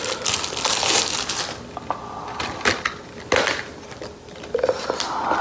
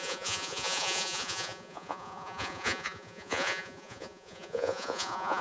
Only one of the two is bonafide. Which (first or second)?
first